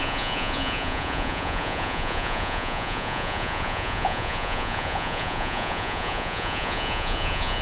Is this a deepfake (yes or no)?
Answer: yes